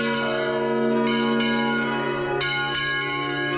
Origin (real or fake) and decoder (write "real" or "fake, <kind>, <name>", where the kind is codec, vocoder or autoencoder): real